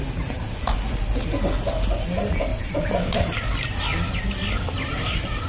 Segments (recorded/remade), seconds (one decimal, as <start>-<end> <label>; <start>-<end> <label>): 0.0-1.4 remade; 1.4-2.5 recorded; 2.5-3.8 remade; 3.8-5.5 recorded